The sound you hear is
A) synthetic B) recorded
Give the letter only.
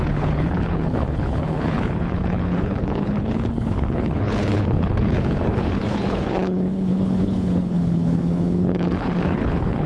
A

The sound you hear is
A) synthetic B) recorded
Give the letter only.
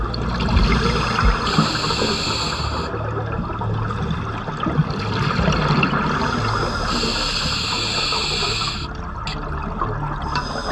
B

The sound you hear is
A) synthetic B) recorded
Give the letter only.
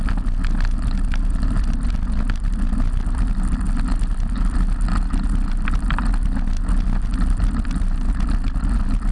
B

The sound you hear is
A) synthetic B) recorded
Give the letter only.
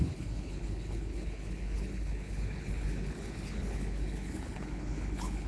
A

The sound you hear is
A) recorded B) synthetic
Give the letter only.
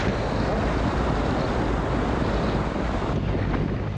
A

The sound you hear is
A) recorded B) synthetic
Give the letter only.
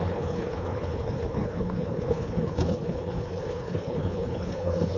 B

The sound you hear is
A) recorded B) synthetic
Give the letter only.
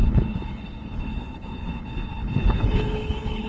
B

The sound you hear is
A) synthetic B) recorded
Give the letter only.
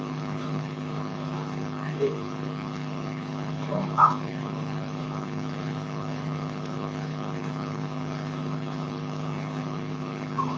A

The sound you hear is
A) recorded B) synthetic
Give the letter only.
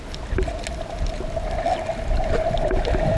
A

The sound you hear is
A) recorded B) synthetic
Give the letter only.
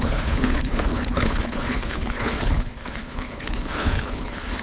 B